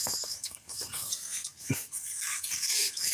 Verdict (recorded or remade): remade